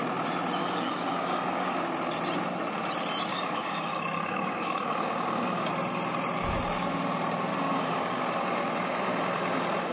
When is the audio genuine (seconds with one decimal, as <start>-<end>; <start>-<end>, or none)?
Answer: 0.0-0.6; 1.8-3.3; 5.7-7.5; 8.2-9.9